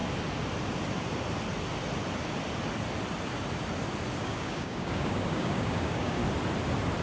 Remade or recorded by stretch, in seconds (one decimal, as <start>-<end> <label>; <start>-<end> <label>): 0.0-4.2 recorded; 4.2-6.2 remade; 6.2-7.0 recorded